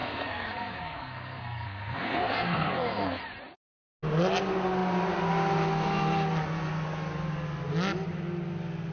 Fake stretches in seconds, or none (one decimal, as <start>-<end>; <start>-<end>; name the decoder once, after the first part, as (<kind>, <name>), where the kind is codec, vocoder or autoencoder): 0.0-3.2 (codec, SNAC)